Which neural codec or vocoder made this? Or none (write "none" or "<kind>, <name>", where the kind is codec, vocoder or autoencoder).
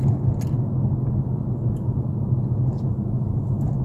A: none